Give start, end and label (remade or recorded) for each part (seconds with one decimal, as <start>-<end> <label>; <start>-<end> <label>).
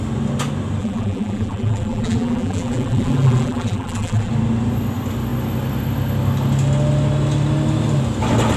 0.0-0.8 recorded; 0.8-4.3 remade; 4.3-8.6 recorded